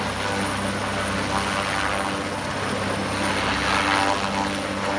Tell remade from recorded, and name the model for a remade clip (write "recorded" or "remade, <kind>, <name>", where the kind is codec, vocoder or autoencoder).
recorded